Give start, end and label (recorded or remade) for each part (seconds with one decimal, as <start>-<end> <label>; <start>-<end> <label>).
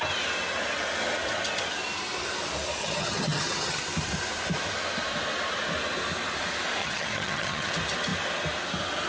0.0-2.8 recorded; 2.8-3.8 remade; 3.8-6.8 recorded; 6.8-7.7 remade; 7.7-9.1 recorded